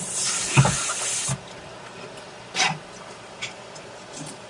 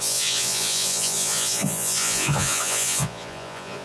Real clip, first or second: first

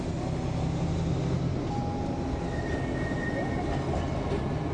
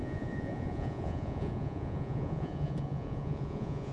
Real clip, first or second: first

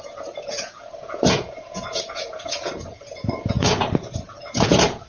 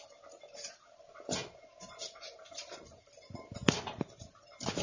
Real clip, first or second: second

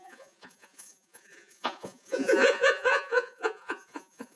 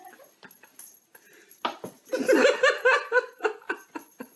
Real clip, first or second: second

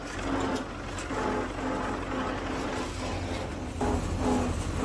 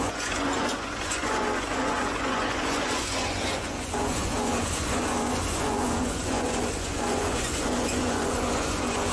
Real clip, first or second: first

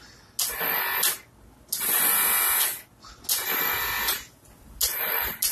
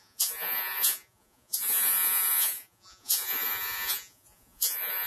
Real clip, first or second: first